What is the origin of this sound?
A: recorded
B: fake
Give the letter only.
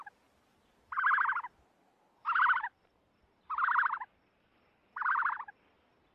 A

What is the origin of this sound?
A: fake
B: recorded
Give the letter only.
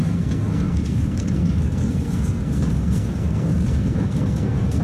A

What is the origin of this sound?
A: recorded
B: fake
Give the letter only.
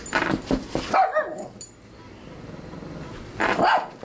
A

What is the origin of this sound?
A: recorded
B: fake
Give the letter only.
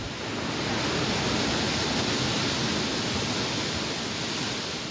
A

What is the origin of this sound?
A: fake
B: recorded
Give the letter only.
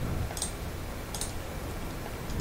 B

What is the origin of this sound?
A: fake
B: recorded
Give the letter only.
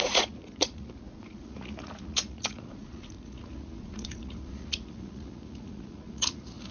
A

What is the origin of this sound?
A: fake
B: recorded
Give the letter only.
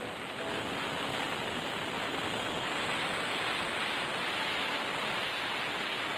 B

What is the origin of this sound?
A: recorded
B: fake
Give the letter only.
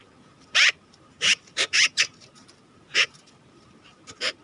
B